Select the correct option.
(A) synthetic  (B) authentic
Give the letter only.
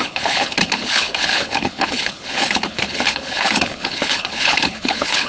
A